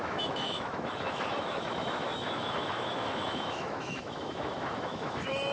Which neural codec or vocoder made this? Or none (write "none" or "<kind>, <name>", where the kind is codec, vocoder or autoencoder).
autoencoder, DAC-VAE